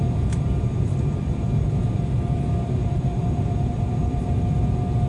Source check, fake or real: fake